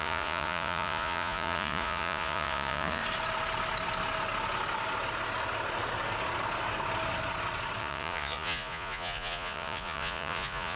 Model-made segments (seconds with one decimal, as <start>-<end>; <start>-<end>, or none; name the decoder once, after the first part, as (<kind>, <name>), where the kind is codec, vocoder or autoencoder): 0.0-3.0 (vocoder, Vocos); 7.8-10.8